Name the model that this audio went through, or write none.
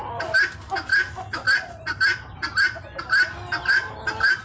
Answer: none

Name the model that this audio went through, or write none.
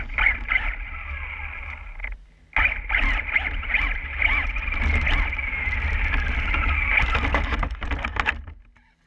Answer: none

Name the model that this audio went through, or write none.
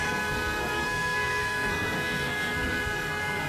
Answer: codec, SNAC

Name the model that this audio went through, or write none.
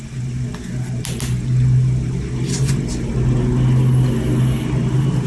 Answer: none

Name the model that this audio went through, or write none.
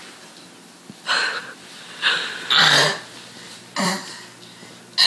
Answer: none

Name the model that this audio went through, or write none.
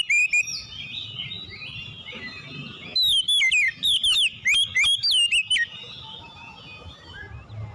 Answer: none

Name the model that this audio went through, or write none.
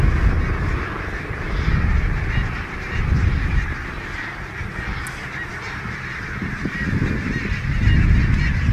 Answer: none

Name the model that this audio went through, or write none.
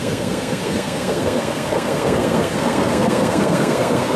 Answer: codec, SNAC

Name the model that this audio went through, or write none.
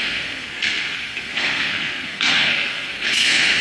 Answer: codec, SNAC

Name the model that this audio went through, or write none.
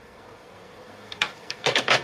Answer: codec, SNAC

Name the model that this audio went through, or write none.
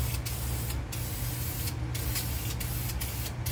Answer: none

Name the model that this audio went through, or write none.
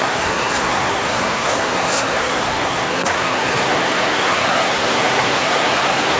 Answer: codec, SNAC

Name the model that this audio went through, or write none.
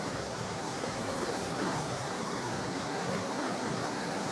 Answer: codec, SNAC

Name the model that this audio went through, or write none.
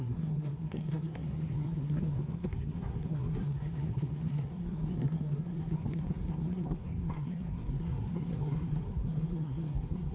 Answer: codec, SNAC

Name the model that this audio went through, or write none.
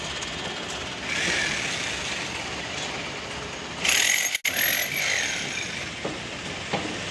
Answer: none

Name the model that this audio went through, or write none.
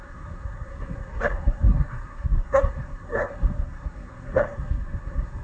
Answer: codec, SNAC